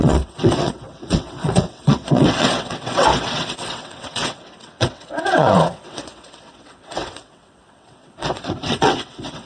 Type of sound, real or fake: fake